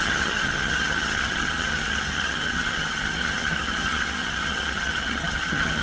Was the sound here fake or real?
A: fake